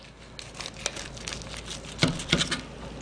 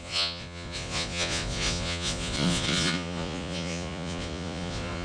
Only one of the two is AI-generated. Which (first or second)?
second